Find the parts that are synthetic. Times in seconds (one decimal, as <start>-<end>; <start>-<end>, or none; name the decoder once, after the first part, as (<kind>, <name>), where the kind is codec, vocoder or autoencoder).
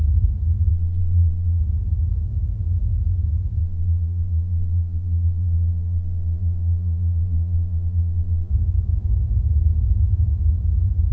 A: 0.7-1.6 (vocoder, Vocos); 3.6-8.5